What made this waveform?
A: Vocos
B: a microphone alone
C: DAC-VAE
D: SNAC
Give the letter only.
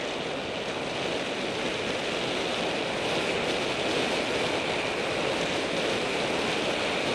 B